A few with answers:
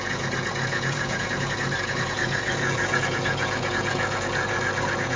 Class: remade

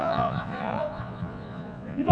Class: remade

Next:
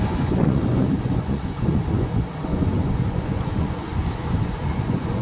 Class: remade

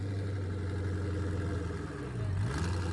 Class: recorded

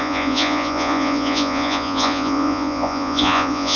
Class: remade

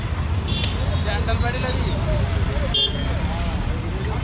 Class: recorded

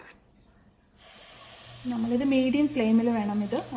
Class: recorded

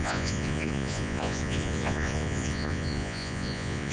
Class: remade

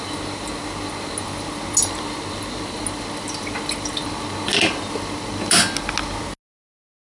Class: recorded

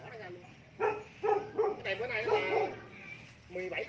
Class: recorded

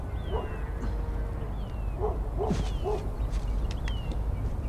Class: recorded